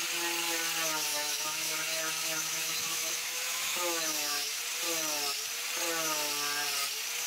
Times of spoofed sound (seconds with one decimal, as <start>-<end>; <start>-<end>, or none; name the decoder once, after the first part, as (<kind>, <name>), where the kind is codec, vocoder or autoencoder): 1.1-4.6 (autoencoder, DAC-VAE)